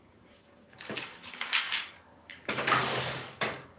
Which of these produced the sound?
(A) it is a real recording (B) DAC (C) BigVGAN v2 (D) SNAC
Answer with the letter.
B